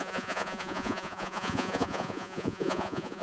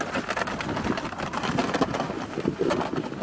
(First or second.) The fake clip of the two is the first